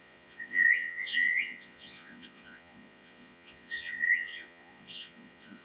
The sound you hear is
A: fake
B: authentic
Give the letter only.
A